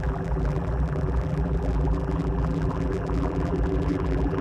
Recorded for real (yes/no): no